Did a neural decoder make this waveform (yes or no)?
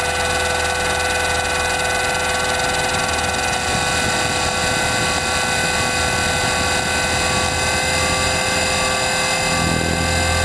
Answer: no